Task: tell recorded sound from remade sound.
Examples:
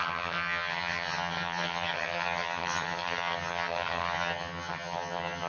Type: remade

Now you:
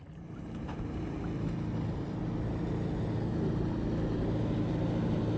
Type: recorded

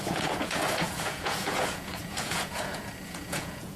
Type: remade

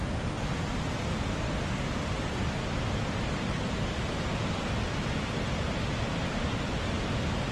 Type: recorded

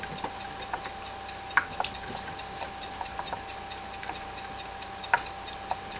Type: recorded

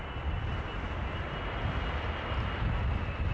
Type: recorded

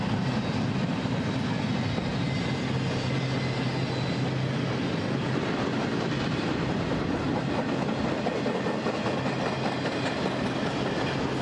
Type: recorded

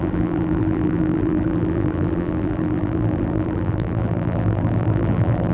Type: remade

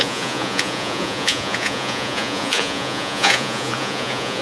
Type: remade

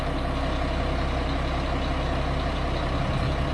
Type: recorded